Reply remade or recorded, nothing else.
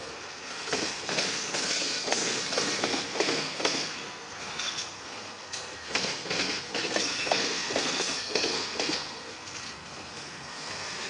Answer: remade